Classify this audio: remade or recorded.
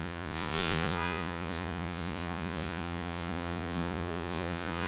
remade